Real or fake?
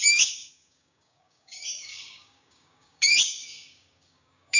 fake